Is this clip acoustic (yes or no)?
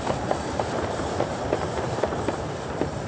no